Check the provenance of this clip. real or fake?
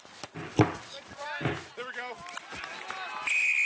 real